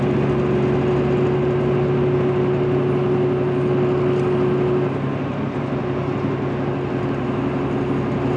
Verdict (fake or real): real